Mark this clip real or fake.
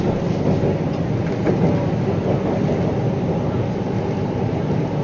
real